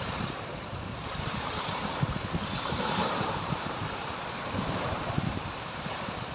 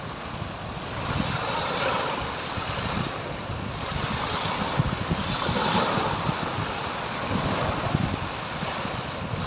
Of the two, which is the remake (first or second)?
first